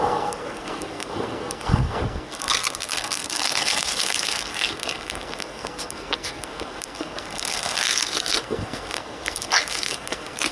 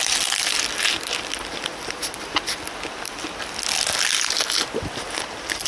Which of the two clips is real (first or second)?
second